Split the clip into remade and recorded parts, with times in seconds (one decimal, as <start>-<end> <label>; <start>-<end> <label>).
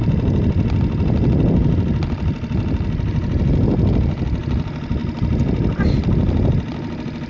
0.0-7.3 recorded